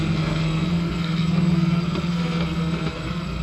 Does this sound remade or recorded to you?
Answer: remade